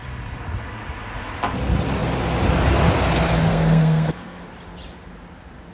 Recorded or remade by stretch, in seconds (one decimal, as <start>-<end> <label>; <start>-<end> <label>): 0.0-3.5 recorded; 3.5-4.4 remade; 4.4-5.7 recorded